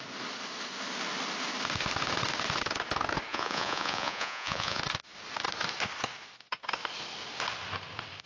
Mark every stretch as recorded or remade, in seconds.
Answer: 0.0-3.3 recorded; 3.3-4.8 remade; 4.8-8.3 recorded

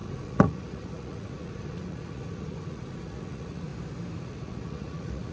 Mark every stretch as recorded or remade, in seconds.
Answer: 0.0-3.7 remade; 3.7-4.2 recorded; 4.2-5.3 remade

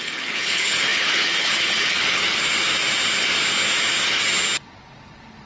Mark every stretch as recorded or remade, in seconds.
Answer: 0.0-2.2 remade; 2.2-5.5 recorded

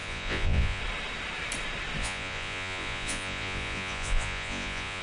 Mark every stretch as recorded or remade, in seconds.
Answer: 0.0-0.8 remade; 0.8-2.0 recorded; 2.0-5.0 remade

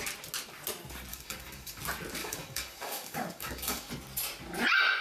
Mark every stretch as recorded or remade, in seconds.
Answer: 0.0-1.1 recorded; 1.1-1.8 remade; 1.8-2.2 recorded; 2.2-3.9 remade; 3.9-5.0 recorded

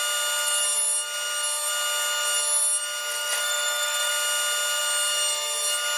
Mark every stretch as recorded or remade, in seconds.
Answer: 0.0-3.1 recorded; 3.1-4.1 remade; 4.1-6.0 recorded

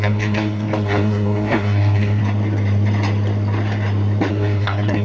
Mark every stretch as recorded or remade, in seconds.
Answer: 0.0-2.2 remade; 2.2-4.3 recorded; 4.3-5.0 remade